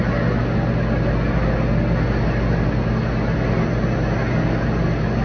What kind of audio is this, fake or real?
real